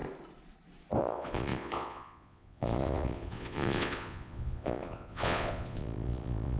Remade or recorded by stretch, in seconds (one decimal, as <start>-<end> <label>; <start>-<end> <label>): 0.0-1.0 recorded; 1.0-6.6 remade